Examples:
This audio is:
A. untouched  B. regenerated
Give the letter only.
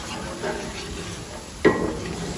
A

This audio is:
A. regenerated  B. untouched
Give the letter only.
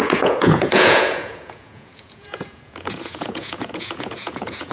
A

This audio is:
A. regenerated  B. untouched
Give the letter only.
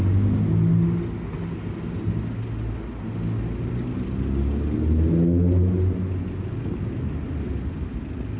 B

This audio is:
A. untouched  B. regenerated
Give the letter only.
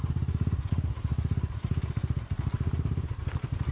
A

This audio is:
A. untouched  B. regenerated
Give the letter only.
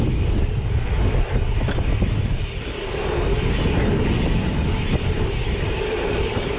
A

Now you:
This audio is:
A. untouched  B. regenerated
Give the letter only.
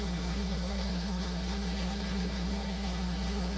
B